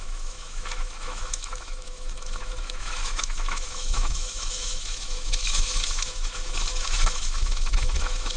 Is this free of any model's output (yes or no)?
no